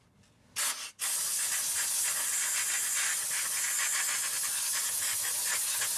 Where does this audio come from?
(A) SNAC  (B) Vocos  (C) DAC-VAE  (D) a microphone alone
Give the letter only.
D